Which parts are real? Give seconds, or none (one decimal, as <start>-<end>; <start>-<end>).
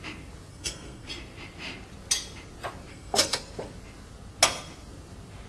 0.0-0.5; 1.1-2.9; 3.4-5.5